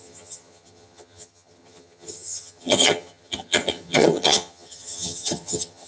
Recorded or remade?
remade